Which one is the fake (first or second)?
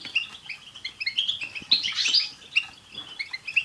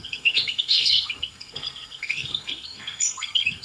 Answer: second